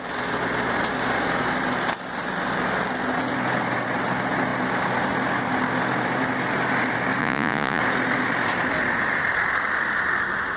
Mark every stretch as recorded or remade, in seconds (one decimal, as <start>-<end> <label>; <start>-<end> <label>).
0.0-7.2 recorded; 7.2-7.8 remade; 7.8-10.6 recorded